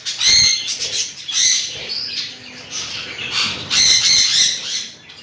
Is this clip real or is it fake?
fake